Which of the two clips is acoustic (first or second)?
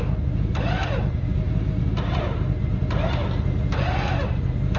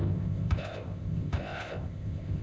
first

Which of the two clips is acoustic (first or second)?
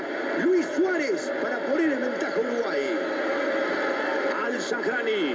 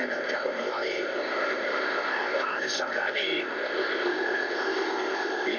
first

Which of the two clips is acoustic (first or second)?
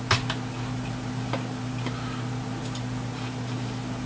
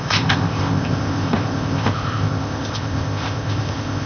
first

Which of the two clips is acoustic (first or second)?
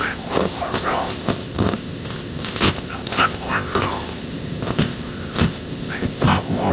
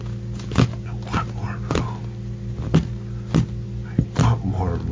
second